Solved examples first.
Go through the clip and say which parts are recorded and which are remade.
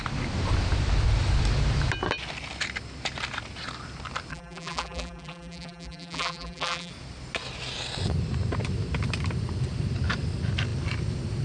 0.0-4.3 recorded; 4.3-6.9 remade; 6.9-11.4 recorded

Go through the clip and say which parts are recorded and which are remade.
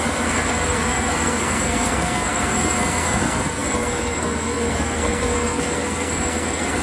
0.0-6.8 remade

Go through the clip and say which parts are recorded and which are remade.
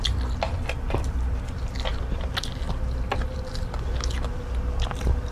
0.0-5.3 recorded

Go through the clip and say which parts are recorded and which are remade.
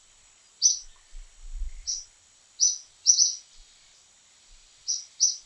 0.0-5.5 recorded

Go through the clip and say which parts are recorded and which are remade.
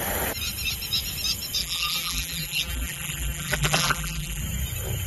0.0-1.6 recorded; 1.6-4.4 remade; 4.4-5.1 recorded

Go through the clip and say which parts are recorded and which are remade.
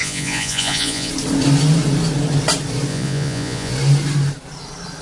0.0-1.1 remade; 1.1-2.9 recorded; 2.9-3.7 remade; 3.7-5.0 recorded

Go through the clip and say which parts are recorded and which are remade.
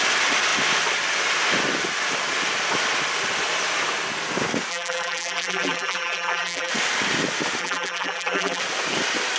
0.0-4.7 recorded; 4.7-6.7 remade; 6.7-7.6 recorded; 7.6-8.6 remade; 8.6-9.4 recorded